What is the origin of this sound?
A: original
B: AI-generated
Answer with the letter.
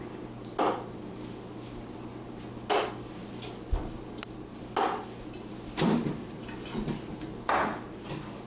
A